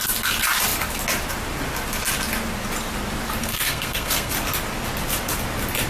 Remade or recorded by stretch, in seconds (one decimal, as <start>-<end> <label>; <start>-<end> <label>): 0.0-3.4 recorded; 3.4-4.3 remade; 4.3-5.9 recorded